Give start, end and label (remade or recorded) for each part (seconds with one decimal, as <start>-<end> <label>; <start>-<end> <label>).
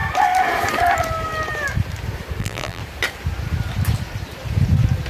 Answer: 0.0-2.4 recorded; 2.4-2.8 remade; 2.8-5.1 recorded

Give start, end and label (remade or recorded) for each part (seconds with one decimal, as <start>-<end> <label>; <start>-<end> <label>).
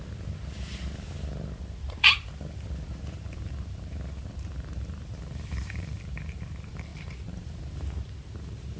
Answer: 0.0-8.8 remade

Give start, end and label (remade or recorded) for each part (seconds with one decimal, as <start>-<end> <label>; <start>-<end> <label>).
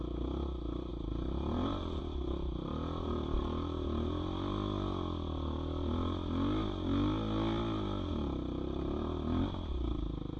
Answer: 0.0-0.9 recorded; 0.9-2.0 remade; 2.0-10.4 recorded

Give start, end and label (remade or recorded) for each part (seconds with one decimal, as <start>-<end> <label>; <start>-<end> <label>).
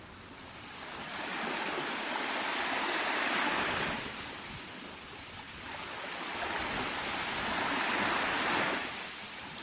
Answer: 0.0-1.3 recorded; 1.3-5.9 remade; 5.9-9.6 recorded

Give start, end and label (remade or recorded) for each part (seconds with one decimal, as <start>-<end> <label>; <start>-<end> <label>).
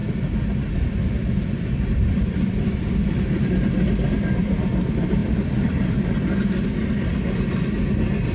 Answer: 0.0-3.5 remade; 3.5-5.2 recorded; 5.2-6.1 remade; 6.1-8.3 recorded